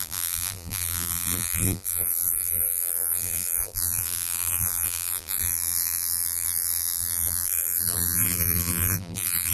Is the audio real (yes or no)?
no